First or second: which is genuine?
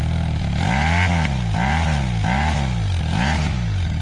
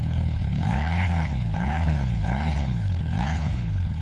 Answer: first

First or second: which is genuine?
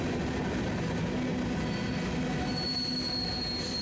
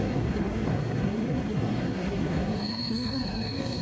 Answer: first